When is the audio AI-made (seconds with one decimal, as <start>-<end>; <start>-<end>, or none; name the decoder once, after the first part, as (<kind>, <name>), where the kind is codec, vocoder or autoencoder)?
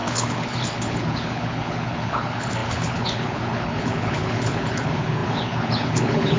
0.0-6.4 (codec, HILCodec)